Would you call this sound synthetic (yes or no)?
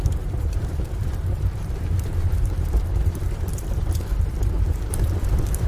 yes